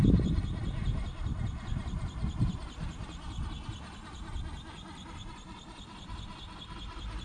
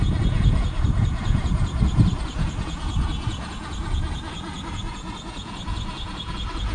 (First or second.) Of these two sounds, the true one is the first